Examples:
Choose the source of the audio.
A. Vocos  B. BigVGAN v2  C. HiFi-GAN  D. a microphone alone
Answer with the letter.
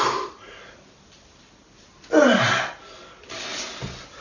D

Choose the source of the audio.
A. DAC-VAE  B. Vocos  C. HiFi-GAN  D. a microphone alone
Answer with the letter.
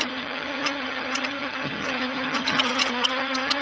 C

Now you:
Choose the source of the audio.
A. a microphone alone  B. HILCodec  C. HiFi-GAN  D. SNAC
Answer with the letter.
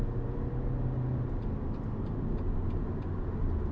A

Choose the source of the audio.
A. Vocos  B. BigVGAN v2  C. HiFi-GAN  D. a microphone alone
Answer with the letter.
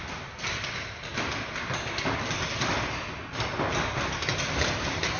D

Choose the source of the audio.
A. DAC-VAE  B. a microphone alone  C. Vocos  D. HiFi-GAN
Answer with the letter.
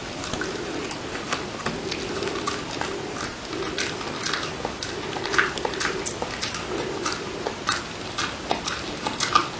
B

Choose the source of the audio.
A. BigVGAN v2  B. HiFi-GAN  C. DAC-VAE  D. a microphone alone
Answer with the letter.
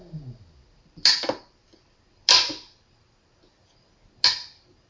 D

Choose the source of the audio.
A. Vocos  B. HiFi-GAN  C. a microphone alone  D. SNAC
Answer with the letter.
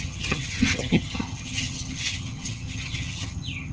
B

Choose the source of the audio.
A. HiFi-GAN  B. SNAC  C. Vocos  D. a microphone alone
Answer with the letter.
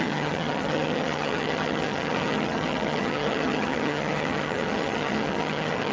A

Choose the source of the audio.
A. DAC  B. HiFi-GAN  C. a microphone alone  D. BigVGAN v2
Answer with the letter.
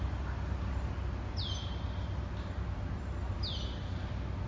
C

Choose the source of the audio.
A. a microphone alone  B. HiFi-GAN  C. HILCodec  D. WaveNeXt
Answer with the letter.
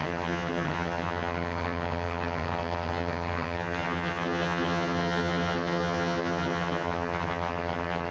B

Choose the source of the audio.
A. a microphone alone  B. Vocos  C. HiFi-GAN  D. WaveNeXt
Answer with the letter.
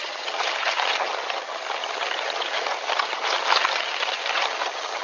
C